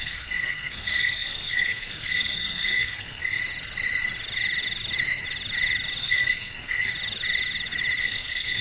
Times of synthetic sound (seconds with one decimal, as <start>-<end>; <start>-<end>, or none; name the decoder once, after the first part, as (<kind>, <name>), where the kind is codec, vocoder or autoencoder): 0.0-3.4 (codec, SNAC); 6.0-6.9; 8.0-8.6